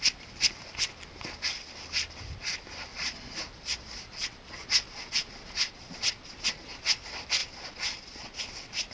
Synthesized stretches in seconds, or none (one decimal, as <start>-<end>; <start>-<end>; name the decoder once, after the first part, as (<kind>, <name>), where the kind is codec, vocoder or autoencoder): 2.9-7.0 (vocoder, Vocos); 7.4-8.4